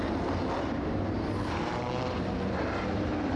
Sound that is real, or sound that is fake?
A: fake